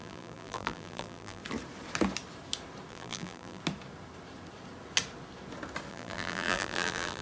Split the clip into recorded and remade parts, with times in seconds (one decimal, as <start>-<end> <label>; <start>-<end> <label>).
0.0-1.4 remade; 1.4-2.9 recorded; 2.9-3.6 remade; 3.6-5.9 recorded; 5.9-7.2 remade